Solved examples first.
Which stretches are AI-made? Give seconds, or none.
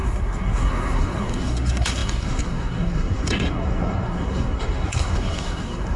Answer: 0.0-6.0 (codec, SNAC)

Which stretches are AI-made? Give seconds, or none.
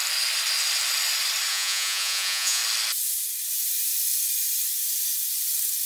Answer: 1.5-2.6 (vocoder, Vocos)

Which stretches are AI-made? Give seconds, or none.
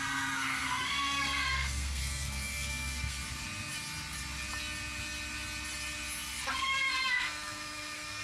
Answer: 0.0-3.2 (codec, SNAC); 6.6-8.2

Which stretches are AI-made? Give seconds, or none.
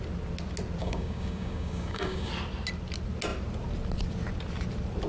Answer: 0.8-2.3 (codec, DAC)